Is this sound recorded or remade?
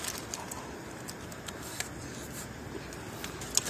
recorded